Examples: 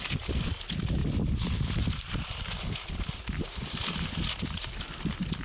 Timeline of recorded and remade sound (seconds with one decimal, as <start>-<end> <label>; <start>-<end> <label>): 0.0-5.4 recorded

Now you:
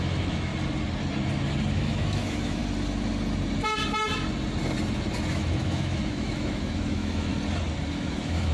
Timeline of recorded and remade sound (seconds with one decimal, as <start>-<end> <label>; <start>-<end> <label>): 0.0-0.5 remade; 0.5-1.7 recorded; 1.7-2.6 remade; 2.6-5.3 recorded; 5.3-7.3 remade; 7.3-7.9 recorded; 7.9-8.5 remade

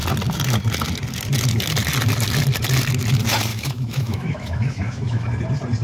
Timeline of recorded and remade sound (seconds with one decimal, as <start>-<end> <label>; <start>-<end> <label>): 0.0-3.5 recorded; 3.5-5.3 remade; 5.3-5.8 recorded

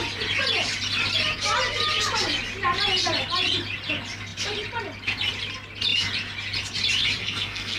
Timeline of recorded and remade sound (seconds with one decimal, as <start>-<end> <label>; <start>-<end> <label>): 0.0-7.2 recorded; 7.2-7.8 remade

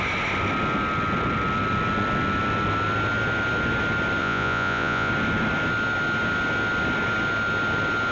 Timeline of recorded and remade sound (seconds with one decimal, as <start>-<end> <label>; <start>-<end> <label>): 0.0-4.2 recorded; 4.2-5.1 remade; 5.1-8.1 recorded